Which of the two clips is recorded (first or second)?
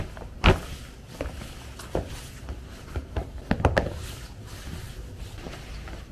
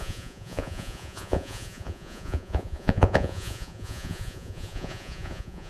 first